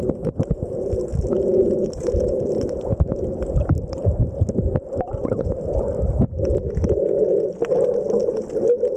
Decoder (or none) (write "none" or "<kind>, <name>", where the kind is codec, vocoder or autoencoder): none